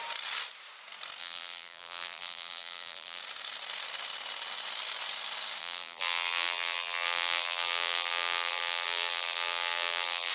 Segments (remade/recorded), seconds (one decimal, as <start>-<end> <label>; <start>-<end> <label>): 0.0-1.2 recorded; 1.2-3.2 remade; 3.2-5.6 recorded; 5.6-10.3 remade